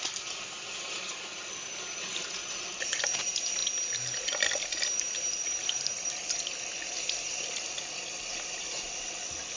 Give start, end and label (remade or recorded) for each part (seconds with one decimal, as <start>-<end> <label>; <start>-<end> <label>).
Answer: 0.0-9.6 recorded